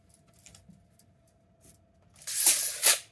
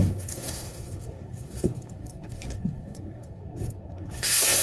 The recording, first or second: first